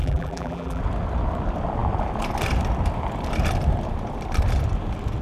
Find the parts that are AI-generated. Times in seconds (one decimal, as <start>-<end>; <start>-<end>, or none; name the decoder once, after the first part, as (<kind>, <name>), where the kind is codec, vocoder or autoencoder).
0.0-0.8 (vocoder, BigVGAN v2)